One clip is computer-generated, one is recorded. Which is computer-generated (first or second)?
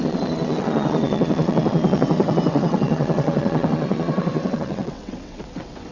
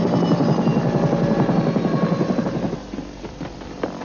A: first